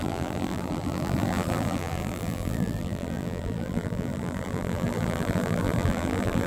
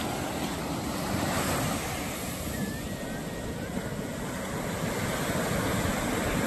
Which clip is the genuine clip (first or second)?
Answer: second